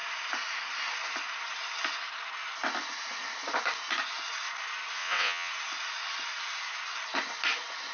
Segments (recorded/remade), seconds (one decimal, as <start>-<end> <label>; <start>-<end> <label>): 0.0-5.0 recorded; 5.0-5.5 remade; 5.5-7.9 recorded